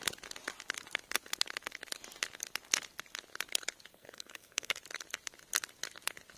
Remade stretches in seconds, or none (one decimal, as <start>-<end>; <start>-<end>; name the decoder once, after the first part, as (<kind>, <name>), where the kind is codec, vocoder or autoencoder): 3.9-4.8 (codec, SNAC)